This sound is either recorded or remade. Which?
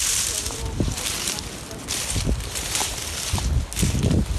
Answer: recorded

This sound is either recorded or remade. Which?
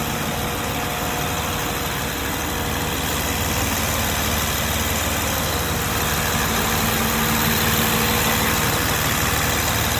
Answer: recorded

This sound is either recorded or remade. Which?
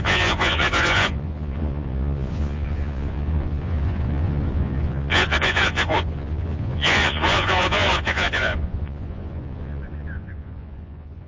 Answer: remade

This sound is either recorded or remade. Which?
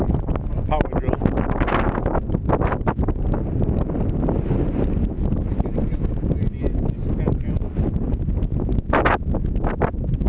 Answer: recorded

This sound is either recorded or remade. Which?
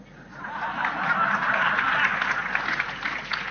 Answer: recorded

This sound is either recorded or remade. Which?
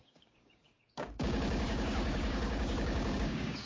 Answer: remade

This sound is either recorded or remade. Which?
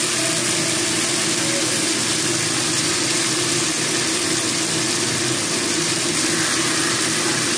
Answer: recorded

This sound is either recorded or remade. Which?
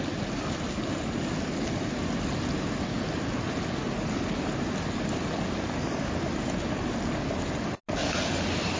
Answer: recorded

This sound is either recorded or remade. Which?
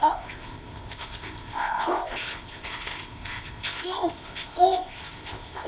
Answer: remade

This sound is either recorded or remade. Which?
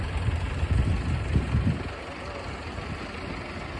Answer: recorded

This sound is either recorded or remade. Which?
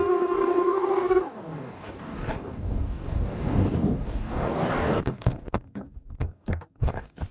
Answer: remade